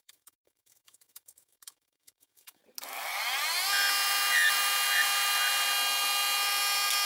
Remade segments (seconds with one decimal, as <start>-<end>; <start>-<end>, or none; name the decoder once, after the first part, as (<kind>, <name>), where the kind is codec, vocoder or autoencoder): 0.0-2.6 (autoencoder, DAC-VAE)